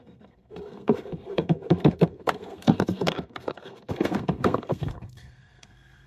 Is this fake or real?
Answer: fake